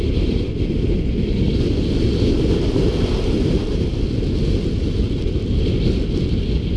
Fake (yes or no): no